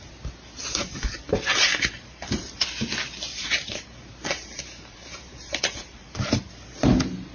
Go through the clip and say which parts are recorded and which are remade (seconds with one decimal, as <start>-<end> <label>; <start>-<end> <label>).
0.0-0.6 recorded; 0.6-2.4 remade; 2.4-3.3 recorded; 3.3-6.5 remade; 6.5-7.3 recorded